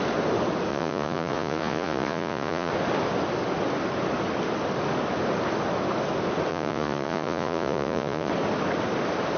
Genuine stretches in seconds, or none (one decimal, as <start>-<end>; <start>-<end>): 0.0-0.7; 2.7-6.5; 8.3-9.4